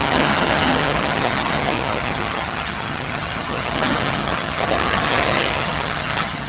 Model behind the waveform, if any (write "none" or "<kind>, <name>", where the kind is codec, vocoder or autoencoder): vocoder, HiFi-GAN